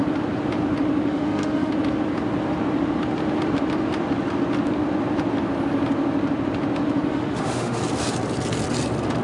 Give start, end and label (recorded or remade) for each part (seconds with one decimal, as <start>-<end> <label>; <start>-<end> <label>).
0.0-1.1 recorded; 1.1-1.7 remade; 1.7-7.1 recorded; 7.1-7.8 remade; 7.8-9.2 recorded